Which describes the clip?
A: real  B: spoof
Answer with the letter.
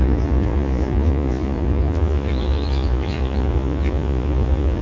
B